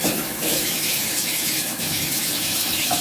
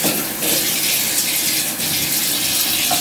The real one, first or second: second